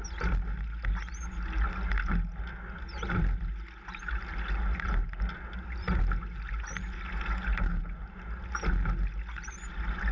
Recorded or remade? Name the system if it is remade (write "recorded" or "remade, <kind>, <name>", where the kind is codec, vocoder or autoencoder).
recorded